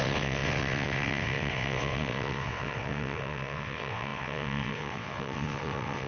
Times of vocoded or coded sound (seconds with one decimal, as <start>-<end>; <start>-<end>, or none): 0.0-6.1